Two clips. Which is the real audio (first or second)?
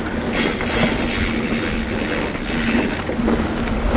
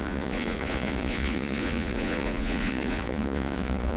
first